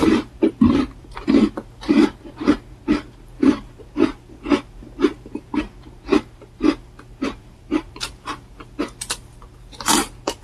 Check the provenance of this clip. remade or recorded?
remade